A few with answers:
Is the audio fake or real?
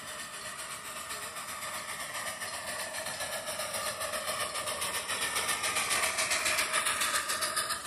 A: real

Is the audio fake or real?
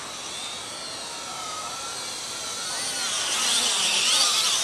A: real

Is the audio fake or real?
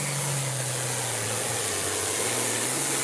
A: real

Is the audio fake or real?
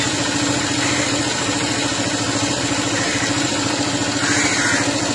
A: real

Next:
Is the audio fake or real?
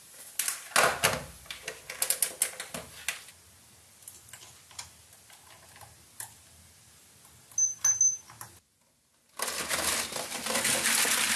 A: real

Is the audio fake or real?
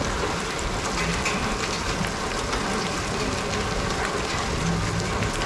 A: real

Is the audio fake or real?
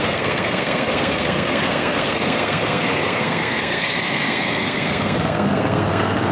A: fake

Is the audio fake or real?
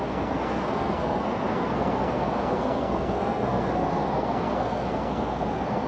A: fake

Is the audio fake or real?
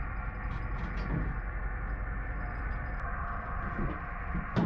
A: real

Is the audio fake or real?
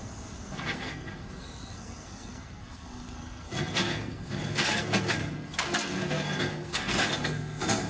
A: fake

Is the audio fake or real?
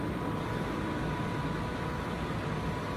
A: real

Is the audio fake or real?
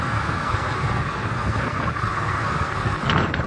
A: fake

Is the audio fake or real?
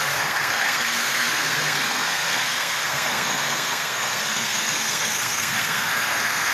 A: fake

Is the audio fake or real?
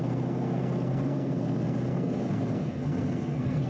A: fake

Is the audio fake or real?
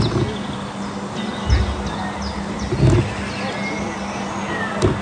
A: real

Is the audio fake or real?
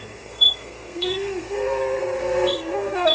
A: fake